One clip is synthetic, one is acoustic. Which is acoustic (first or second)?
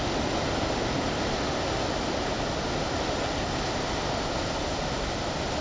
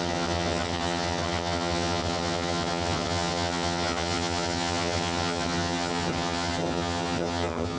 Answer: first